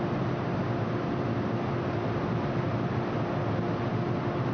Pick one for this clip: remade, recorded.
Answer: recorded